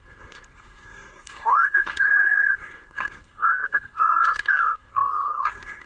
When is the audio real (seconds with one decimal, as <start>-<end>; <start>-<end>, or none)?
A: none